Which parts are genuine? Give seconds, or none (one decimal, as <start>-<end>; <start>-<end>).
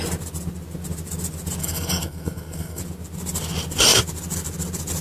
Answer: 0.0-1.6; 2.8-5.0